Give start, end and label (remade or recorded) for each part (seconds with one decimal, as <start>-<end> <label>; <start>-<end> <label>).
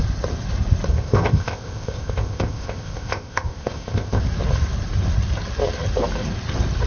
0.0-0.9 recorded; 0.9-4.2 remade; 4.2-6.9 recorded